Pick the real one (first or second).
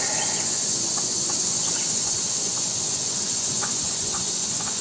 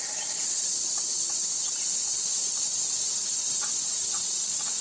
second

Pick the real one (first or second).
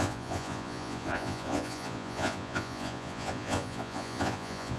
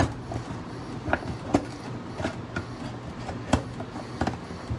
second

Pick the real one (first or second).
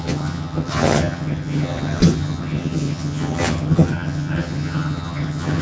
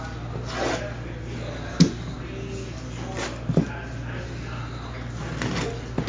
second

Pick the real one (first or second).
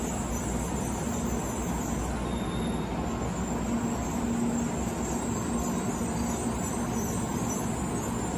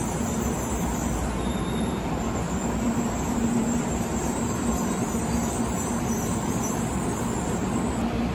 first